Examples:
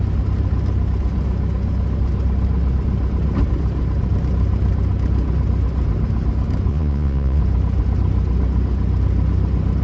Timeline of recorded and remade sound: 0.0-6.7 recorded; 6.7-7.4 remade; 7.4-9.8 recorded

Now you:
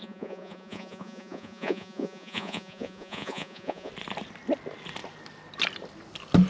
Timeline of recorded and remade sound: 0.0-3.9 remade; 3.9-6.5 recorded

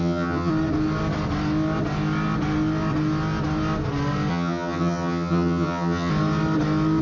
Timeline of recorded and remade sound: 0.0-0.5 remade; 0.5-4.3 recorded; 4.3-6.1 remade; 6.1-7.0 recorded

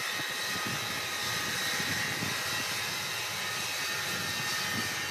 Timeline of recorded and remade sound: 0.0-1.2 recorded; 1.2-4.3 remade; 4.3-5.1 recorded

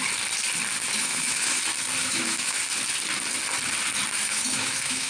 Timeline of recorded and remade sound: 0.0-1.0 recorded; 1.0-1.6 remade; 1.6-2.0 recorded; 2.0-2.6 remade; 2.6-4.2 recorded; 4.2-5.1 remade

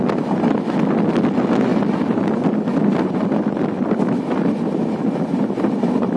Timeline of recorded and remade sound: 0.0-6.2 recorded